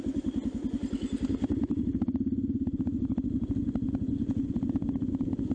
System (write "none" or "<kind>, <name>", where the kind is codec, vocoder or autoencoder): none